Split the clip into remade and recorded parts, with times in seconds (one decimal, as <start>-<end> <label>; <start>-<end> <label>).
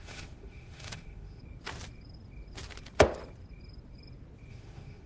0.0-1.4 remade; 1.4-4.5 recorded; 4.5-5.1 remade